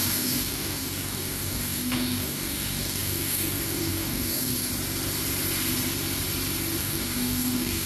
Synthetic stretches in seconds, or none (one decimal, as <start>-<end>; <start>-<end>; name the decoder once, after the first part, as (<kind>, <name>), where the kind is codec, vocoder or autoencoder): 0.0-4.7 (codec, DAC); 6.8-7.9